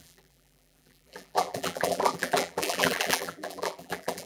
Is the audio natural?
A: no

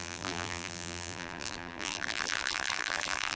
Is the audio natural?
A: no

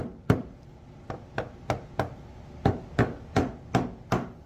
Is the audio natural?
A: yes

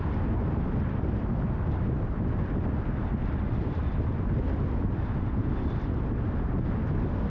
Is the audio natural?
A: yes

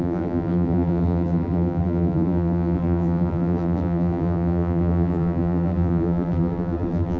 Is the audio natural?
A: no